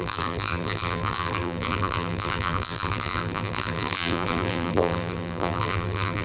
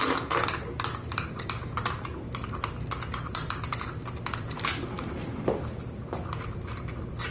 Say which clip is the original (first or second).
second